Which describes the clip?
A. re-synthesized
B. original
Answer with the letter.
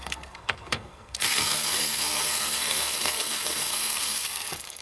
A